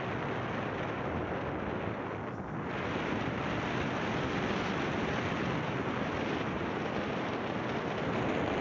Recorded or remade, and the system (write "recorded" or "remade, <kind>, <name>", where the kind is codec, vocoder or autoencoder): recorded